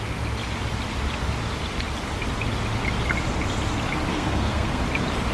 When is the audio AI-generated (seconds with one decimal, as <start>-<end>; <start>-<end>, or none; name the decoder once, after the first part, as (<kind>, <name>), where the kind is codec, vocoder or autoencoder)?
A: 4.1-4.8 (codec, SNAC)